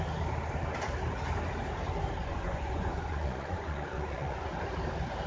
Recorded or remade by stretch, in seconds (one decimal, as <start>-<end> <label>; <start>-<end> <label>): 0.0-2.2 recorded; 2.2-4.5 remade; 4.5-5.3 recorded